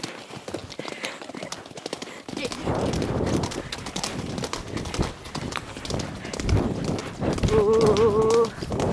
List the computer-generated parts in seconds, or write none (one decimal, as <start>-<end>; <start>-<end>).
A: none

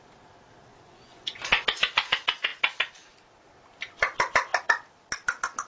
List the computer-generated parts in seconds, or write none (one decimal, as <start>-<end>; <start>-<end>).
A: 0.7-1.4

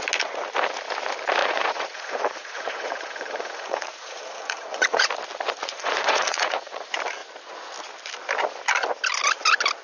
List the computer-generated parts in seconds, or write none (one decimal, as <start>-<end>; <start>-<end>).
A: 1.4-5.1; 5.6-6.8

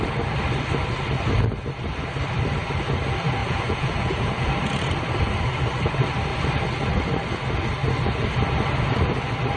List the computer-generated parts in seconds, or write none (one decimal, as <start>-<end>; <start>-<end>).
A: 3.4-4.5

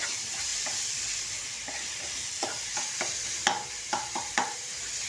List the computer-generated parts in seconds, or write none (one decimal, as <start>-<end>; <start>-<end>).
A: none

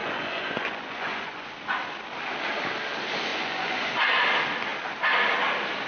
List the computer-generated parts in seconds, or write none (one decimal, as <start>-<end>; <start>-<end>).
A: 0.0-1.5; 3.3-3.9

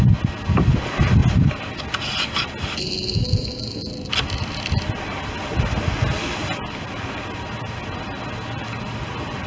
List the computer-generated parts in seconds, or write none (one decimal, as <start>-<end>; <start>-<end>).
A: none